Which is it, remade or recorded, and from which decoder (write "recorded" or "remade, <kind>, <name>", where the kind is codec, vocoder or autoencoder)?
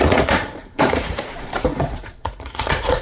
remade, vocoder, Vocos